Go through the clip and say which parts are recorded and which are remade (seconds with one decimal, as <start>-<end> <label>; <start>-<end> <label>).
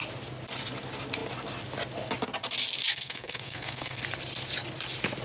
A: 0.0-2.9 recorded; 2.9-4.0 remade; 4.0-5.2 recorded